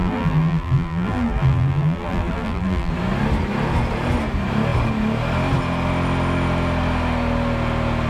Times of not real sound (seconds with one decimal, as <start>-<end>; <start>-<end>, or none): 0.0-2.9

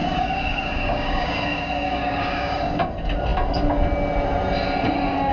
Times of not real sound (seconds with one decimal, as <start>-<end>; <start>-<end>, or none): 0.0-2.9

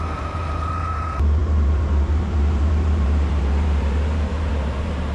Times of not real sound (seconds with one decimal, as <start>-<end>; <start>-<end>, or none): 0.0-5.1

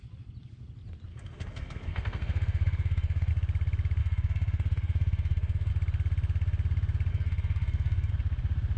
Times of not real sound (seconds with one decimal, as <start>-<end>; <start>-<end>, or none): 1.1-3.3; 4.0-5.7; 7.1-8.1

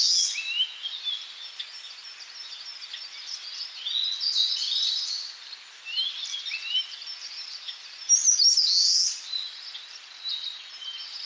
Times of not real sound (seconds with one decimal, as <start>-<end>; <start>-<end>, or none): none

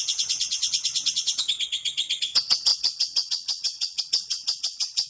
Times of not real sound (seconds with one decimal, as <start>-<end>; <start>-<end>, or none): 0.0-5.1

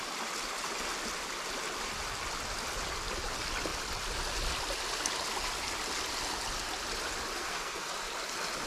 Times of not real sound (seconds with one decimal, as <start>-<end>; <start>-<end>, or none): 7.4-7.9